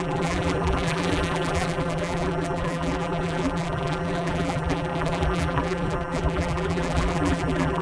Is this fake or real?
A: fake